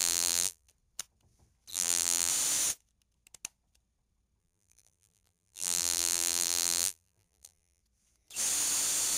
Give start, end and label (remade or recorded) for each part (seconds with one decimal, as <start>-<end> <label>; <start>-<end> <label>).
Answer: 0.0-0.7 remade; 0.7-1.7 recorded; 1.7-2.3 remade; 2.3-4.4 recorded; 4.4-7.8 remade; 7.8-9.2 recorded